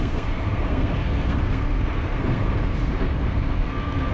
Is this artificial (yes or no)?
yes